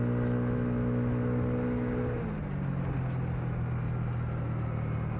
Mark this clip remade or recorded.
recorded